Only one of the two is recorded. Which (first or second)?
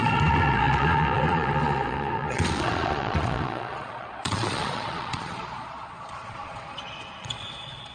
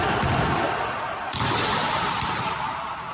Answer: second